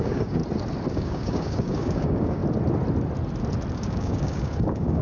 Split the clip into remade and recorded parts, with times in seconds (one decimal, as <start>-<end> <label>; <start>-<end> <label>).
0.0-0.4 remade; 0.4-0.9 recorded; 0.9-2.4 remade; 2.4-3.7 recorded; 3.7-5.0 remade